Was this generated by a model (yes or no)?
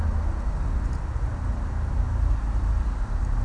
no